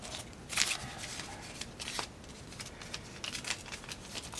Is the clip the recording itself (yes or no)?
yes